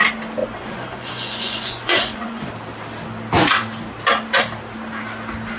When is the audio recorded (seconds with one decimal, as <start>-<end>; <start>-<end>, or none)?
0.0-0.4; 2.5-5.6